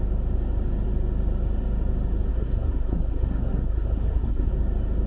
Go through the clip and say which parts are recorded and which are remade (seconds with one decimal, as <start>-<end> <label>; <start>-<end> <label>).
0.0-2.3 recorded; 2.3-4.5 remade; 4.5-5.1 recorded